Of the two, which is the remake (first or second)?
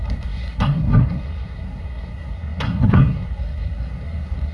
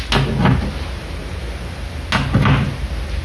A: first